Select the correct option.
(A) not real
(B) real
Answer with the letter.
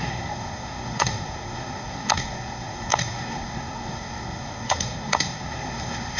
A